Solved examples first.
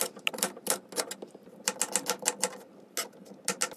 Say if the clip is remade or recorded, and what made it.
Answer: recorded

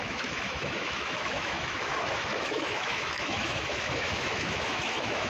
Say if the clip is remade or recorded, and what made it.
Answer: remade, autoencoder, DAC-VAE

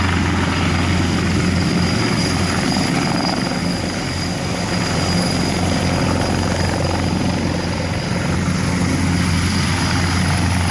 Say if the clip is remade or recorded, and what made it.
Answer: recorded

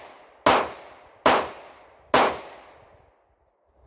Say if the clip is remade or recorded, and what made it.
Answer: recorded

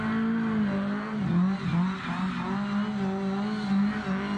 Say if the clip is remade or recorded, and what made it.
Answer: recorded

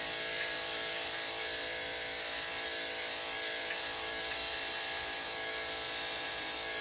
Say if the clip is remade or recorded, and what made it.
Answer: remade, vocoder, BigVGAN v2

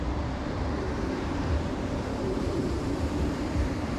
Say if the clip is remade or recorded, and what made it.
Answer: remade, vocoder, BigVGAN v2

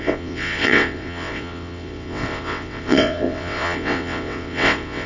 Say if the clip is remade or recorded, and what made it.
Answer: remade, vocoder, WaveNeXt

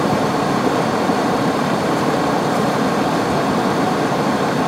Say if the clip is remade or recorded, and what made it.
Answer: remade, vocoder, BigVGAN v2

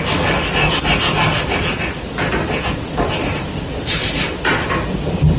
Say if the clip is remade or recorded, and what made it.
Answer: recorded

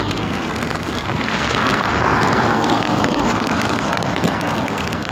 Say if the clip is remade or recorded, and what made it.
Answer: remade, codec, SNAC